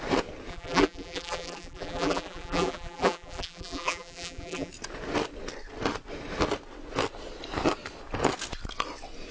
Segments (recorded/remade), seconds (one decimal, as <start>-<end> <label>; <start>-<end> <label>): 0.0-0.5 recorded; 0.5-4.7 remade; 4.7-9.3 recorded